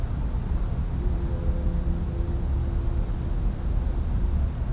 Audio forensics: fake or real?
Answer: real